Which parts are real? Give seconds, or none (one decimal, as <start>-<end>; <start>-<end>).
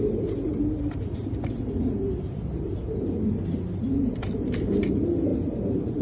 0.0-6.0